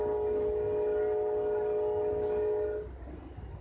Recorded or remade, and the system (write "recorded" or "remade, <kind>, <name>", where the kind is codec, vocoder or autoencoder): recorded